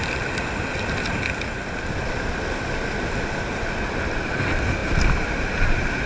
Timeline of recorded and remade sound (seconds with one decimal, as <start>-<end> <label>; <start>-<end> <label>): 0.0-6.1 recorded